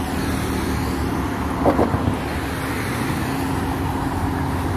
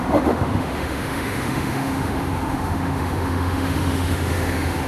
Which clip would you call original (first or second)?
first